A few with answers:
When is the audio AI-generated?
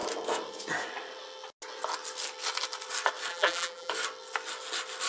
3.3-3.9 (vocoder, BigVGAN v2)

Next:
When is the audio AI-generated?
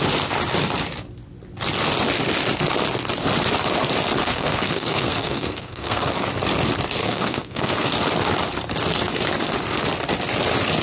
4.2-6.3 (codec, SNAC); 7.0-7.9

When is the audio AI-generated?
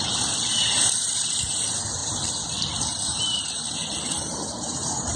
0.0-5.2 (vocoder, BigVGAN v2)